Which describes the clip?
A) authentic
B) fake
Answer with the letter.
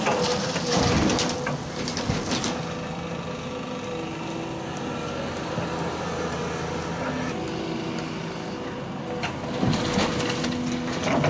A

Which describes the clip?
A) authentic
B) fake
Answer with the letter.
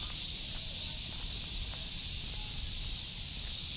B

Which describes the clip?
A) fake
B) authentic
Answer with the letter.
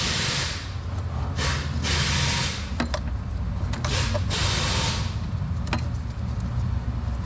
B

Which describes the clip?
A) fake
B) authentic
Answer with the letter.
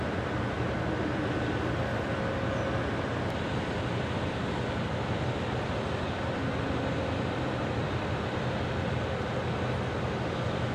B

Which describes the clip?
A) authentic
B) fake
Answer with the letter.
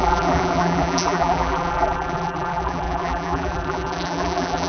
B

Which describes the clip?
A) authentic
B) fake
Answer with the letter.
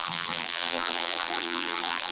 B